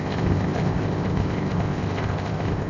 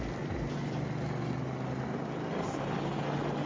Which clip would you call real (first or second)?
second